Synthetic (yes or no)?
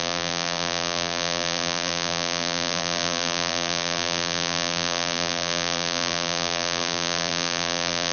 yes